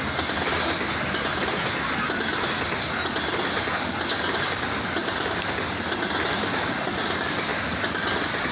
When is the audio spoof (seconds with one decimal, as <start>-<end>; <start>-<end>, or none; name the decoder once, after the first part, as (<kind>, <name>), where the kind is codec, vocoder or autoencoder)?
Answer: 5.0-5.5 (vocoder, BigVGAN v2)